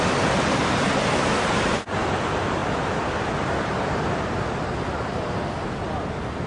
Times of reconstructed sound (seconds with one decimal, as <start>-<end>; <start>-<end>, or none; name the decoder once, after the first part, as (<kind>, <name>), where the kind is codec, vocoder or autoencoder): none